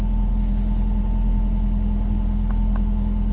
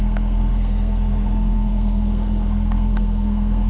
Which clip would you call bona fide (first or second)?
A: first